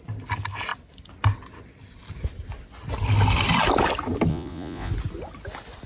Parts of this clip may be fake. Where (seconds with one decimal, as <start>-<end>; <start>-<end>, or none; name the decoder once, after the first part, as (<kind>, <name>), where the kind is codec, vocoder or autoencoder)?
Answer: 4.3-4.9 (vocoder, Vocos)

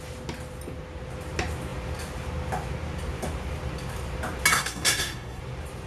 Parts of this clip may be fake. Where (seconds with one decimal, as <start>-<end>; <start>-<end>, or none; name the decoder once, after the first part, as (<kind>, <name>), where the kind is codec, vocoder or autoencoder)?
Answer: 4.5-5.4 (codec, SNAC)

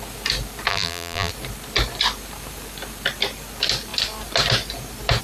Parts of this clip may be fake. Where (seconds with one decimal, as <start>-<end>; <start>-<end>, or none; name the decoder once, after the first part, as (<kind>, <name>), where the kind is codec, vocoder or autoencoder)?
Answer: 0.7-1.3 (vocoder, BigVGAN v2)

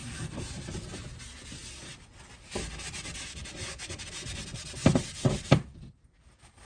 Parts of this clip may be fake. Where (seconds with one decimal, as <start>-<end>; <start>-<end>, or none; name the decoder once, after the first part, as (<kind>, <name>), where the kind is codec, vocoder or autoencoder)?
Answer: 0.0-1.2 (vocoder, BigVGAN v2); 4.8-5.5

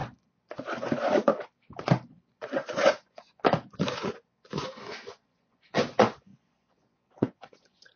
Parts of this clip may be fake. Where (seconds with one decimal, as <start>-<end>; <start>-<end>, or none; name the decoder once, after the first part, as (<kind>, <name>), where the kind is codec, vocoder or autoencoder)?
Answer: 0.8-1.3 (vocoder, Vocos); 2.3-8.0

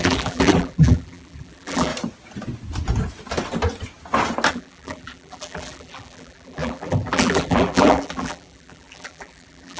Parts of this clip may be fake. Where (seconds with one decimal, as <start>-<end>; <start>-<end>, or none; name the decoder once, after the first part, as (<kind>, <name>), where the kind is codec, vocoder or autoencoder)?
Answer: 0.0-1.9 (vocoder, BigVGAN v2); 4.5-9.8